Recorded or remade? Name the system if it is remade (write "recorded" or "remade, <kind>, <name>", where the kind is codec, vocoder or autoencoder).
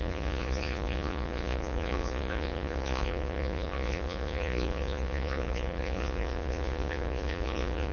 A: remade, vocoder, Vocos